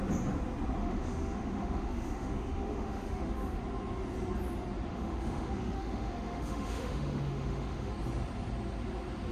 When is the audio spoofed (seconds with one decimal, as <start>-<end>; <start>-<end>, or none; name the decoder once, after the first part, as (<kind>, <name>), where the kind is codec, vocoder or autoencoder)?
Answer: 0.8-3.6 (autoencoder, DAC-VAE); 4.9-7.9